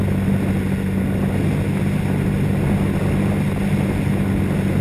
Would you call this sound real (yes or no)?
yes